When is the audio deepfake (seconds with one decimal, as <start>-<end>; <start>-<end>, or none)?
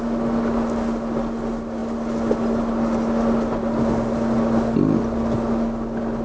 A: none